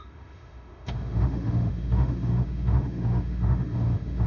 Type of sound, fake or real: fake